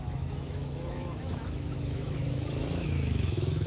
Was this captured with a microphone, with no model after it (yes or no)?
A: no